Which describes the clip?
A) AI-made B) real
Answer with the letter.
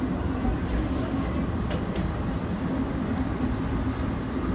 B